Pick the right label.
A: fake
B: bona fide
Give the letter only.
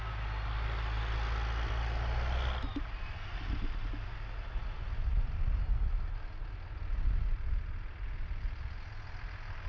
B